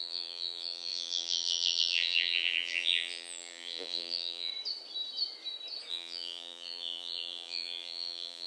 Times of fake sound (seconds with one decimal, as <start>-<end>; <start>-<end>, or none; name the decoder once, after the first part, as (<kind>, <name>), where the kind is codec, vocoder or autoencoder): 0.0-4.5 (vocoder, BigVGAN v2); 5.9-8.5